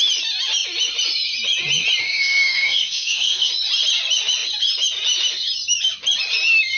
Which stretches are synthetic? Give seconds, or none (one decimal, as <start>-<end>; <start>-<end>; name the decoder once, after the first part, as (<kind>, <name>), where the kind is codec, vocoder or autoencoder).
2.0-3.5 (codec, DAC)